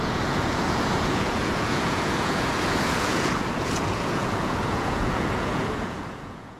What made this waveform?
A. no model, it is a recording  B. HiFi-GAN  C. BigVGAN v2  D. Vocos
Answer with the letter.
D